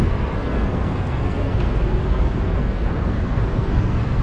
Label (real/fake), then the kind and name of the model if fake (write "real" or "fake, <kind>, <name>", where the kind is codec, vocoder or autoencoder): fake, codec, SNAC